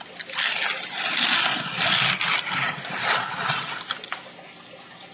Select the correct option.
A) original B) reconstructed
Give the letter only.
A